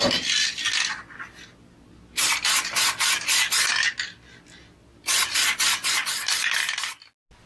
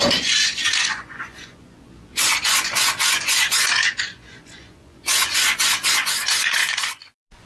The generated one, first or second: second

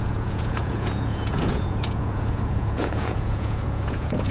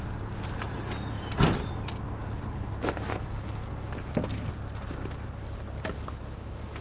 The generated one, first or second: first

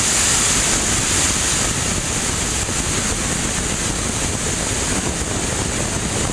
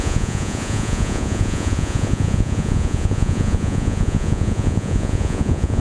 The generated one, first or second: second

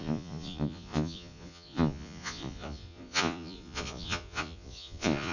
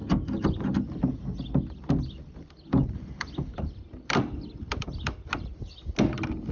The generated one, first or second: first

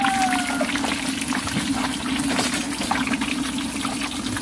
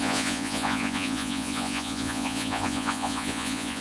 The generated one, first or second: second